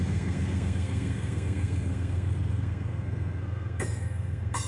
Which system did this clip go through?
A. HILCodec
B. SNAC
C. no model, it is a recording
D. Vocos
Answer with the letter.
B